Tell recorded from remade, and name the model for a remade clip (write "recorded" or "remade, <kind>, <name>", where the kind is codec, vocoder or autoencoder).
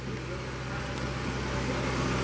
recorded